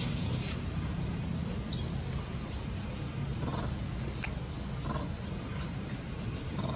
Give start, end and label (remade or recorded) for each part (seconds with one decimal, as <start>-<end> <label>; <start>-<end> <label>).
0.0-1.3 remade; 1.3-2.2 recorded; 2.2-3.5 remade; 3.5-5.3 recorded; 5.3-6.8 remade